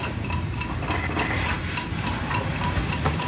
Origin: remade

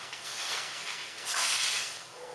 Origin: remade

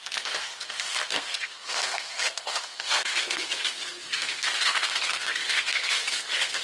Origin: remade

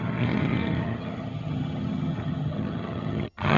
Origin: remade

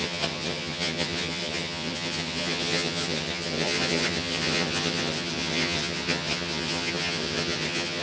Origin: remade